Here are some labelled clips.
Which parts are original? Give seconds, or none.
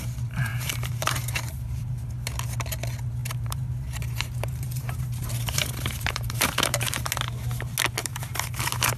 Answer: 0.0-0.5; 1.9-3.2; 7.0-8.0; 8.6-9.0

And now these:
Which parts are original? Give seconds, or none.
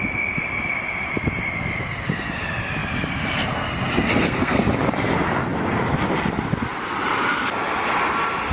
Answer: 0.0-4.1; 4.6-8.5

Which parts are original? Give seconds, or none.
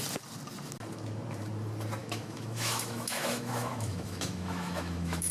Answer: 0.0-2.0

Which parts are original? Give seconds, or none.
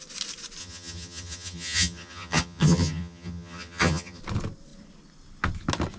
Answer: 0.0-0.6; 4.2-6.0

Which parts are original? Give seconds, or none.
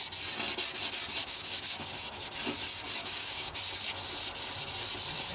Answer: 0.0-1.2; 1.9-3.0; 3.6-5.3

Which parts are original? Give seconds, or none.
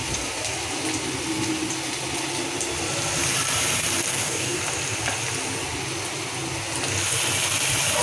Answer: 0.0-4.1; 4.6-8.0